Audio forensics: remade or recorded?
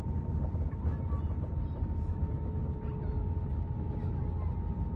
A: recorded